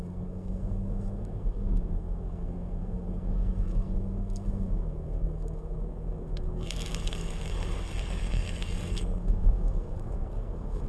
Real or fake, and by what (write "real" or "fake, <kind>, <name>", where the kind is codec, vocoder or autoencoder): fake, codec, SNAC